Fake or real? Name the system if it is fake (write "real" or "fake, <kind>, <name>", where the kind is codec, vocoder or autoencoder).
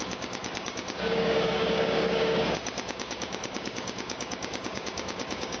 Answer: fake, codec, DAC